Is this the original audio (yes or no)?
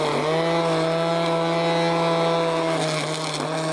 yes